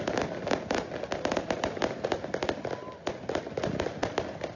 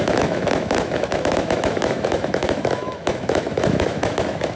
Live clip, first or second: first